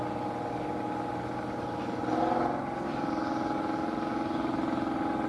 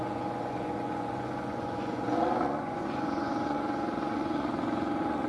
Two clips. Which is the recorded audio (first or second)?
first